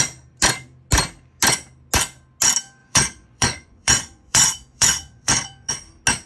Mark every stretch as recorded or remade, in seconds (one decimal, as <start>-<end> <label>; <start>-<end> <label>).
0.0-2.8 recorded; 2.8-5.7 remade; 5.7-6.3 recorded